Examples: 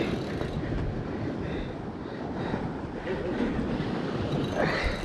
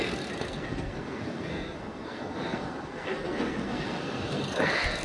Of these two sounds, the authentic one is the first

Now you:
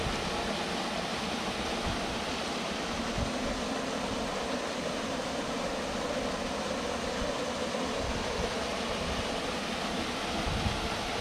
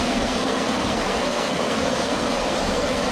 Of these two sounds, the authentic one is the first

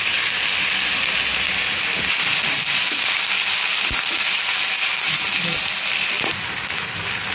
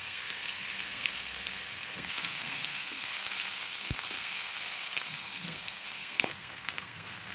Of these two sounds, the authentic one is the first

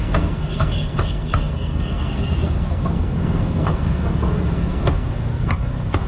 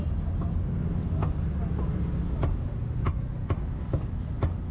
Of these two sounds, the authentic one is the second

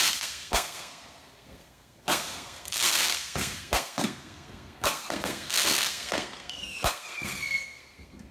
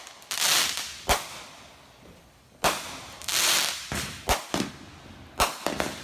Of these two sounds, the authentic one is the second